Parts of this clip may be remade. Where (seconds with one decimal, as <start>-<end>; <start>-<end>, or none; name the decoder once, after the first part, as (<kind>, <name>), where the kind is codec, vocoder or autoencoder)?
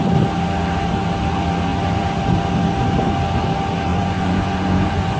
3.9-5.2 (vocoder, Vocos)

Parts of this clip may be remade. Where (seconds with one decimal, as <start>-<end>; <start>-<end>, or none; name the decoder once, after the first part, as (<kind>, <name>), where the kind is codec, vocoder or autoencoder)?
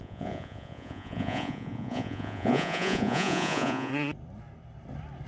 0.0-3.9 (vocoder, Vocos)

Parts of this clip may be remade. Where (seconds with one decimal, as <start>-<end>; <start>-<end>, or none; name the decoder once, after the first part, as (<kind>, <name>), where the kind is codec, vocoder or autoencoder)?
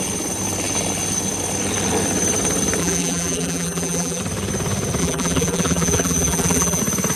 2.8-4.2 (vocoder, BigVGAN v2); 5.0-6.8